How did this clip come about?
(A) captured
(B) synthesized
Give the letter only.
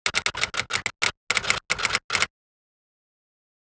A